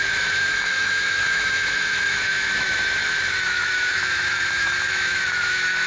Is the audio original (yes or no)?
no